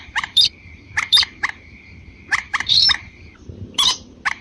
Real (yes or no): no